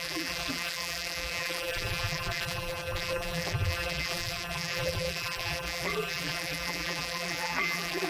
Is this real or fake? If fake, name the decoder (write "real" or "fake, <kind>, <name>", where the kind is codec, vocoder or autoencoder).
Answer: fake, vocoder, BigVGAN v2